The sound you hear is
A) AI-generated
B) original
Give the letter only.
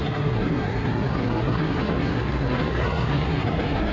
A